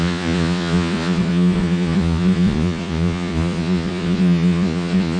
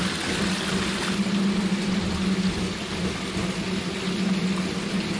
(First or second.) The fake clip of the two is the first